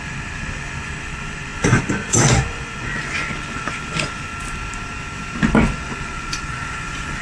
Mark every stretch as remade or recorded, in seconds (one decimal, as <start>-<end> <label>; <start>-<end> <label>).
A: 0.0-4.3 remade; 4.3-5.8 recorded; 5.8-7.2 remade